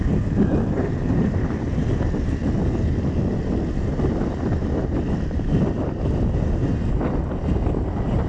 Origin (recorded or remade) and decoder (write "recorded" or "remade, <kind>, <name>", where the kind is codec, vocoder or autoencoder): recorded